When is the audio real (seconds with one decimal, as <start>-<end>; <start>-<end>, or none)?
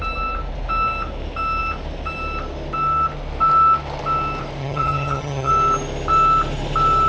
0.0-4.6; 5.5-7.1